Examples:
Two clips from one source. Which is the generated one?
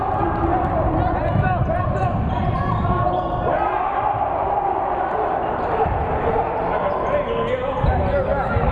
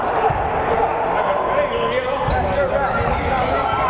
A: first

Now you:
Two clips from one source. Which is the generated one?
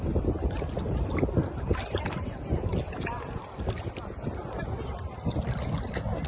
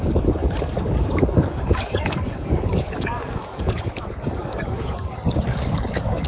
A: second